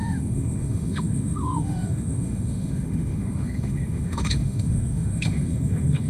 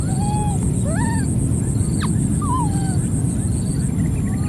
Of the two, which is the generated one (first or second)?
first